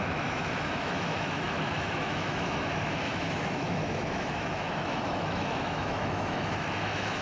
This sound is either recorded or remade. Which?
remade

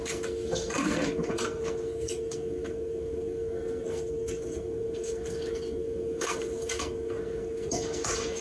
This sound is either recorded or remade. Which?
remade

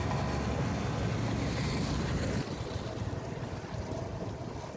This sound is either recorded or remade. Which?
recorded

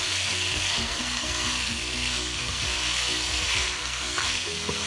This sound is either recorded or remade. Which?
remade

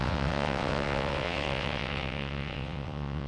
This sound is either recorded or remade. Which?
remade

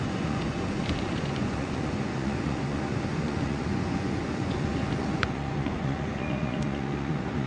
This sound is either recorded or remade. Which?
remade